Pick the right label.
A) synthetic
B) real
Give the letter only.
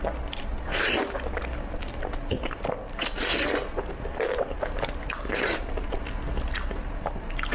B